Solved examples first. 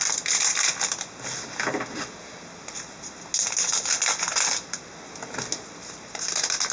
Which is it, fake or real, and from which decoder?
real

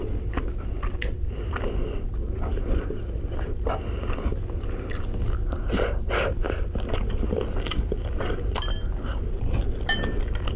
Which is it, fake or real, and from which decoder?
real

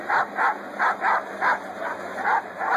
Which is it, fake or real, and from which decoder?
real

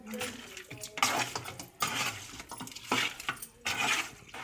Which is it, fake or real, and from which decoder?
real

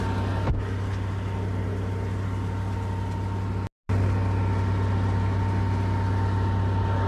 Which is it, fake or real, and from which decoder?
real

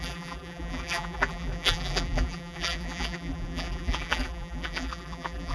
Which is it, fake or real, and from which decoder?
fake, vocoder, BigVGAN v2